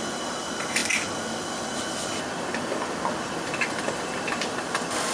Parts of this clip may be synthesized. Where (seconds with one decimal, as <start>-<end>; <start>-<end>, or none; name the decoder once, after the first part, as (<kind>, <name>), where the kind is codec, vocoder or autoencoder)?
none